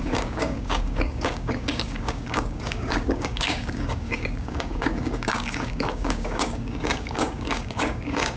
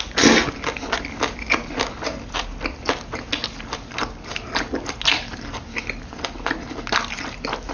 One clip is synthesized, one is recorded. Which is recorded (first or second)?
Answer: second